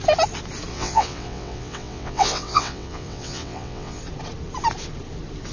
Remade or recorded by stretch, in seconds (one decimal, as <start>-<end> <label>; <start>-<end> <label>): 0.0-0.7 recorded; 0.7-4.0 remade; 4.0-5.5 recorded